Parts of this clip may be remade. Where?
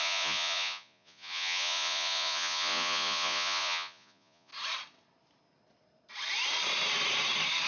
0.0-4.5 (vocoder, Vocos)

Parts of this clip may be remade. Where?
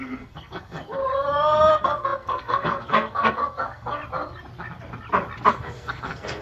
0.0-1.0 (codec, SNAC); 1.7-4.0; 5.5-6.4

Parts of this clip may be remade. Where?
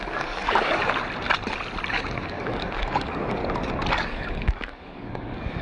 0.0-0.8 (codec, DAC); 1.9-3.4; 3.9-5.6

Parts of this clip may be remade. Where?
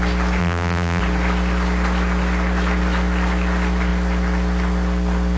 0.4-1.0 (vocoder, BigVGAN v2)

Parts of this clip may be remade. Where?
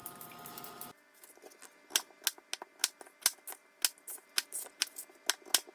none